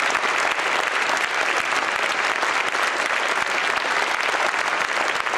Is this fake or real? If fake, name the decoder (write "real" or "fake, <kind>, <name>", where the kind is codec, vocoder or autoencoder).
real